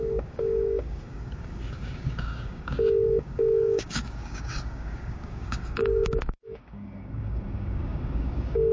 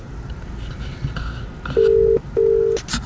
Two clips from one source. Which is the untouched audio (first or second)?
second